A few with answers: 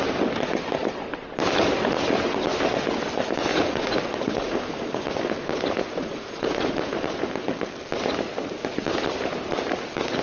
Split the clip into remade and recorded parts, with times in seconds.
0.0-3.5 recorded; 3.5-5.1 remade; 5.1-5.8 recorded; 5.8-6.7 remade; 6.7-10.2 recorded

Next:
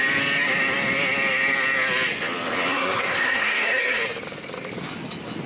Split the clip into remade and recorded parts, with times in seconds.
0.0-2.7 recorded; 2.7-4.0 remade; 4.0-5.5 recorded

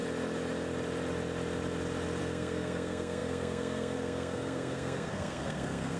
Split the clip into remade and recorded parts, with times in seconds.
0.0-2.2 recorded; 2.2-6.0 remade